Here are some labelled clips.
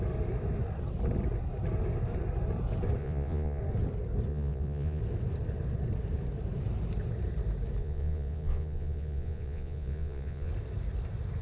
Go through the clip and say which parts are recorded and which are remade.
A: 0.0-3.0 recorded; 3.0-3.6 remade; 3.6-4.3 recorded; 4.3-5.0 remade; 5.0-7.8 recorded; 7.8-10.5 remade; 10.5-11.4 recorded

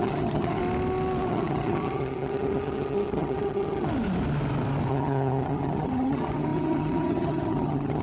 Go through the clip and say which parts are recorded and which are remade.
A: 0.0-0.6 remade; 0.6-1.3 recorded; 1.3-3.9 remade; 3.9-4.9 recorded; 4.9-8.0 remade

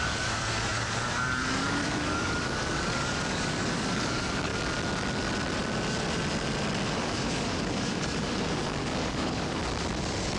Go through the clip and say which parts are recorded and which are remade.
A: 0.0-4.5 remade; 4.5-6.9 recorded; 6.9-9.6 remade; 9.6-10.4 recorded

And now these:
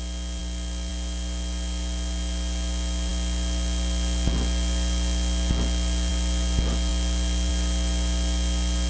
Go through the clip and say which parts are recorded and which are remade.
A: 0.0-8.9 recorded